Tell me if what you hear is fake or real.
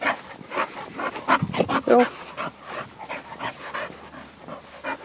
real